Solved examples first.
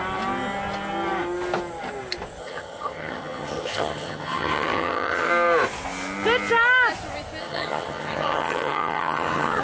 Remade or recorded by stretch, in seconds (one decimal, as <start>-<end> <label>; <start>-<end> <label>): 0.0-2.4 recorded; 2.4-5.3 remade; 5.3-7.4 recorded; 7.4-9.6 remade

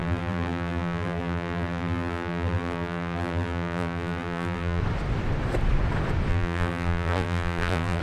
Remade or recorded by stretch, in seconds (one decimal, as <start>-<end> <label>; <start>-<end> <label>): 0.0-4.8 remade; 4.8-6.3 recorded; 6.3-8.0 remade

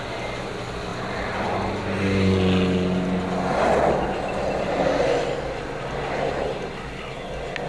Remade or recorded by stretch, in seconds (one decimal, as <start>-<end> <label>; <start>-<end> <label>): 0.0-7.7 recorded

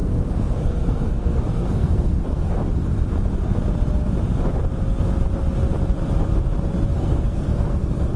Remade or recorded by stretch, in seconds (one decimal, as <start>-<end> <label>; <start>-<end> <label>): 0.0-2.6 remade; 2.6-6.9 recorded; 6.9-8.2 remade

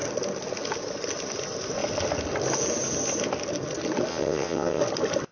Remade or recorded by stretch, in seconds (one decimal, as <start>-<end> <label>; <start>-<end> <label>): 0.0-4.1 recorded; 4.1-4.8 remade; 4.8-5.3 recorded

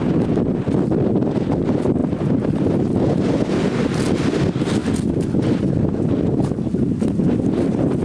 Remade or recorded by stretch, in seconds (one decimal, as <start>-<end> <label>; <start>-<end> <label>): 0.0-2.0 recorded; 2.0-2.9 remade; 2.9-8.0 recorded

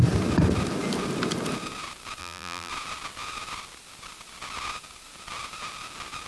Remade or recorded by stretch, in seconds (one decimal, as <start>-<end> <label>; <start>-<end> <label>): 0.0-2.2 recorded; 2.2-2.7 remade; 2.7-6.3 recorded